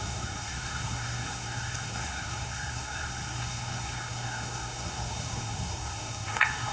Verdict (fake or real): fake